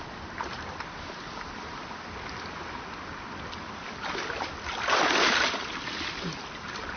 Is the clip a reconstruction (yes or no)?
no